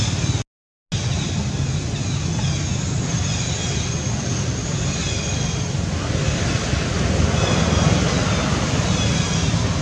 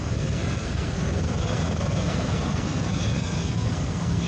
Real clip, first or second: first